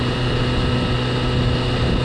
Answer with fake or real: real